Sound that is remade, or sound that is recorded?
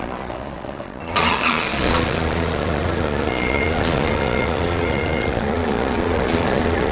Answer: remade